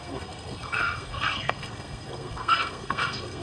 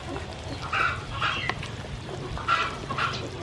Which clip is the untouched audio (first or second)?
second